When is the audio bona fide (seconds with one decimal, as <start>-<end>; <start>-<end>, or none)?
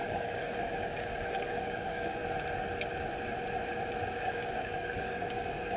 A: 2.2-4.2